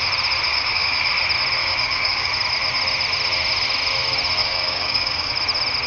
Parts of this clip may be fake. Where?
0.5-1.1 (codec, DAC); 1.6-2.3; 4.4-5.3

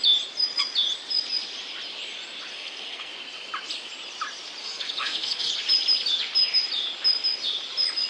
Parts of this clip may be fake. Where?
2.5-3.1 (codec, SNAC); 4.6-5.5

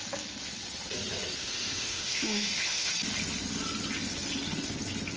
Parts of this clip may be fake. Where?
1.4-2.9 (autoencoder, DAC-VAE)

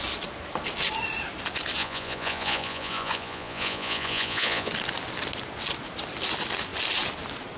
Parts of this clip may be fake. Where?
1.8-4.7 (vocoder, Vocos)